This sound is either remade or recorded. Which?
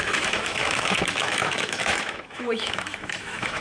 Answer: remade